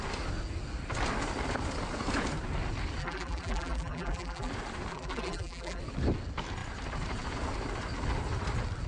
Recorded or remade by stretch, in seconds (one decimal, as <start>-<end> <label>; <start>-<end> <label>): 0.0-3.0 recorded; 3.0-4.5 remade; 4.5-4.9 recorded; 4.9-5.8 remade; 5.8-8.9 recorded